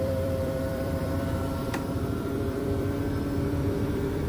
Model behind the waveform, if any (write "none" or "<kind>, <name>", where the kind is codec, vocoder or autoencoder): vocoder, BigVGAN v2